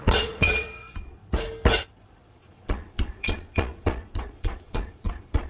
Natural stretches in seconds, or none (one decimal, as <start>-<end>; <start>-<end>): 1.2-2.3